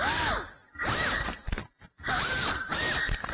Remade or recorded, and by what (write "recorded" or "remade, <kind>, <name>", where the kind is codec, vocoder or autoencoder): recorded